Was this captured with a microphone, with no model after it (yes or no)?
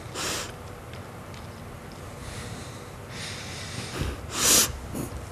yes